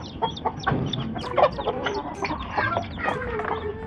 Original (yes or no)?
no